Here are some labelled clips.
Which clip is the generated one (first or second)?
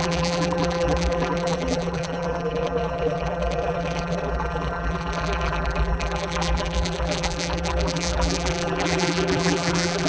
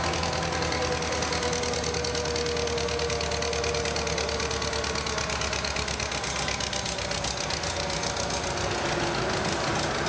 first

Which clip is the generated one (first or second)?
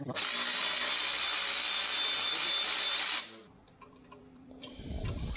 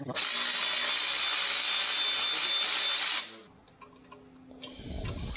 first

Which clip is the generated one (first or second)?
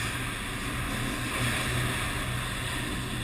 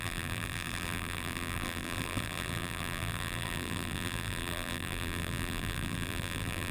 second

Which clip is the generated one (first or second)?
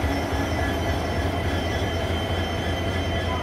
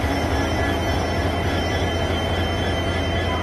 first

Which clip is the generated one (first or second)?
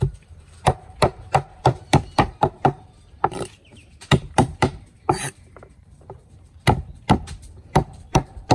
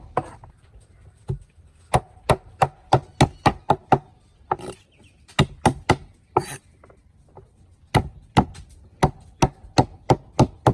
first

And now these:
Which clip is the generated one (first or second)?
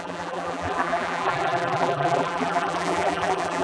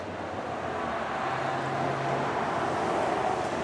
first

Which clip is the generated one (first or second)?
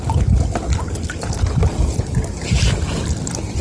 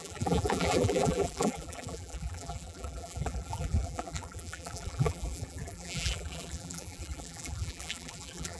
second